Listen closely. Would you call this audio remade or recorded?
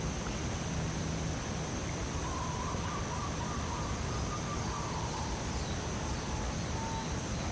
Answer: recorded